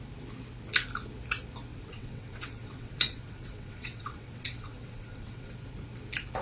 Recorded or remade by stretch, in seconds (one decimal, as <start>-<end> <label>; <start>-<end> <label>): 0.0-1.7 recorded; 1.7-5.5 remade; 5.5-6.4 recorded